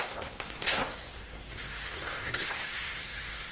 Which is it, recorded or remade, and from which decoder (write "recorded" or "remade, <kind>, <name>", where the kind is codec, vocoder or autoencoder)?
remade, codec, SNAC